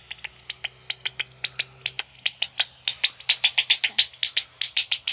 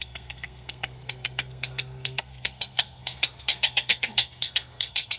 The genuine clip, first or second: first